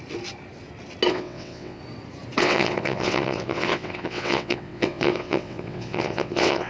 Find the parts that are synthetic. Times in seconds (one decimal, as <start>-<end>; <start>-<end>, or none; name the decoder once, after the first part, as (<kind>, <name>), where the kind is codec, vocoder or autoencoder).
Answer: 1.1-1.8 (vocoder, WaveNeXt); 2.4-6.7